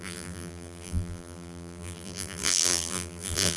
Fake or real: fake